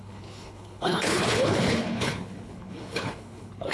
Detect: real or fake fake